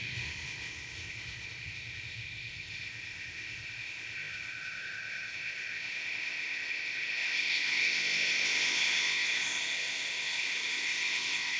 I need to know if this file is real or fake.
fake